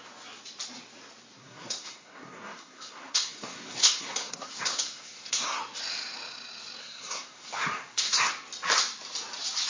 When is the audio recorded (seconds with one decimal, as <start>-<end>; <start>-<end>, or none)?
0.0-1.4; 5.6-6.8; 8.3-9.7